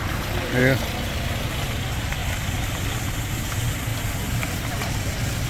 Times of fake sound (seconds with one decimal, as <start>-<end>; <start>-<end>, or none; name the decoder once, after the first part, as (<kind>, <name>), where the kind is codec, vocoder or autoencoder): 0.0-0.6 (vocoder, BigVGAN v2); 1.7-2.2; 3.3-3.9; 4.7-5.5